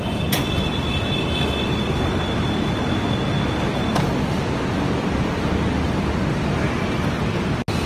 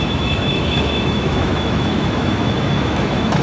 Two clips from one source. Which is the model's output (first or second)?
second